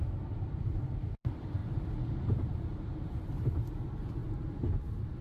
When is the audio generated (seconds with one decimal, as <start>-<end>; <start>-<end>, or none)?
0.0-1.6; 2.1-4.2; 4.8-5.2